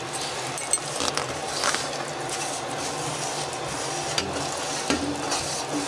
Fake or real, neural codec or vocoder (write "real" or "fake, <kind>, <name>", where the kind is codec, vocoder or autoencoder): real